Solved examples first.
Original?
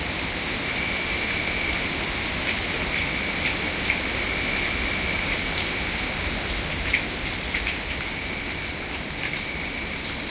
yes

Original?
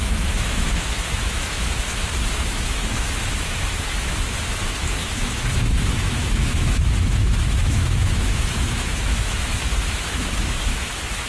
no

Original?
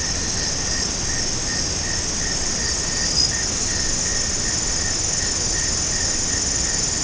yes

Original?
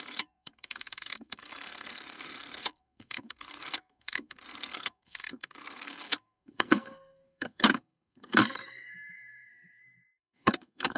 no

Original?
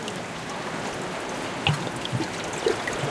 yes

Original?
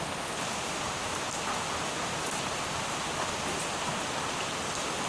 yes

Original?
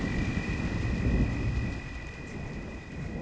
yes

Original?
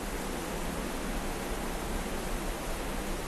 yes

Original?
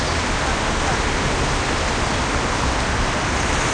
yes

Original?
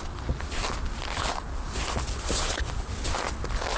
yes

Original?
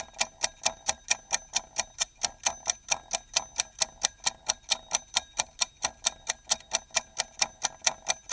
yes